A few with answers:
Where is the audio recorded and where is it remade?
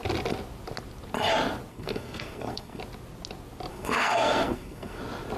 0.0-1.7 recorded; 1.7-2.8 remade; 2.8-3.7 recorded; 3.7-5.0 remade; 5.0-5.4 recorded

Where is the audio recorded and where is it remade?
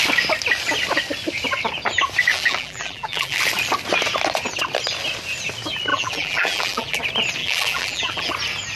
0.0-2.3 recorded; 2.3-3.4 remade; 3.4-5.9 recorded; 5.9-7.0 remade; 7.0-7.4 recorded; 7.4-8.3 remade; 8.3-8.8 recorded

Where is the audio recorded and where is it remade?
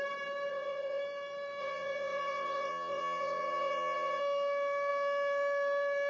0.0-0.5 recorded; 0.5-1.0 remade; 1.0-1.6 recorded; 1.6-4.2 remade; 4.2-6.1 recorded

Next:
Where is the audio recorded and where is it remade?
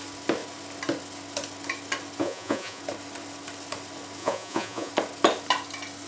0.0-2.2 recorded; 2.2-2.8 remade; 2.8-4.2 recorded; 4.2-4.9 remade; 4.9-6.1 recorded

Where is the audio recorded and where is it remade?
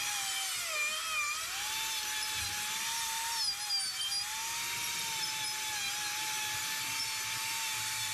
0.0-8.1 recorded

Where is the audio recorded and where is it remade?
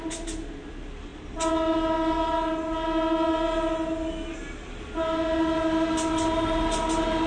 0.0-7.3 recorded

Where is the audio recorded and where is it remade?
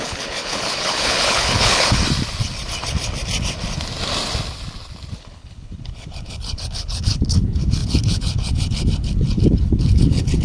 0.0-2.0 remade; 2.0-5.2 recorded; 5.2-10.4 remade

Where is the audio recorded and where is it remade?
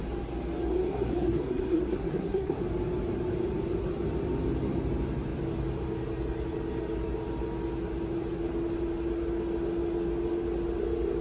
0.0-0.7 recorded; 0.7-2.6 remade; 2.6-11.2 recorded